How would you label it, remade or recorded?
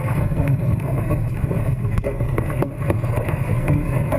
remade